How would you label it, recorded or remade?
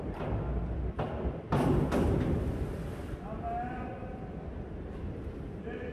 recorded